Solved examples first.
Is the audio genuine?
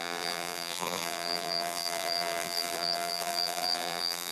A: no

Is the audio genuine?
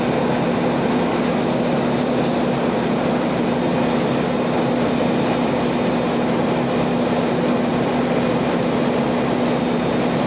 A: yes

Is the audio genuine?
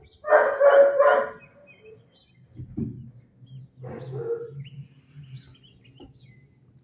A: yes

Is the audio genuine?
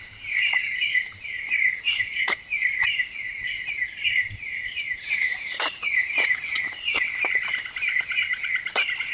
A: no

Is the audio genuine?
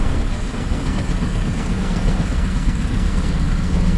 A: no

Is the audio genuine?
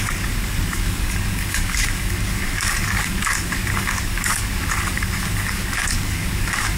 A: no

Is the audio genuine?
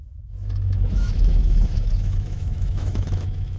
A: no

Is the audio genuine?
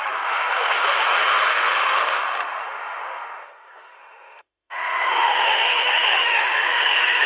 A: no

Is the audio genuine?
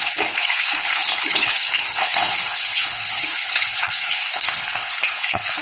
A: no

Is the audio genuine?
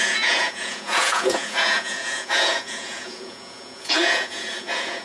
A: no